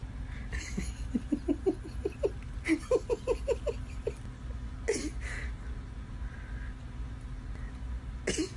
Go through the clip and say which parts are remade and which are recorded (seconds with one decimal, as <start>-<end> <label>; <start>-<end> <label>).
0.0-8.6 recorded